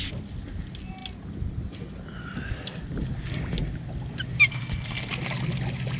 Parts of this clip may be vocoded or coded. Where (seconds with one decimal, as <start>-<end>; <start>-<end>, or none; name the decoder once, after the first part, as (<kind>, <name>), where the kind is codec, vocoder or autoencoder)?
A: 4.5-5.1 (codec, SNAC)